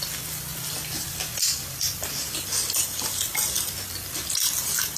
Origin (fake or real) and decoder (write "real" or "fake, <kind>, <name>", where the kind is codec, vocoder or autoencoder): real